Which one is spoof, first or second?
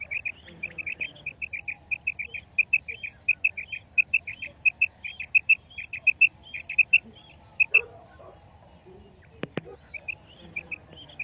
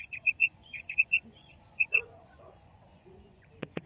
second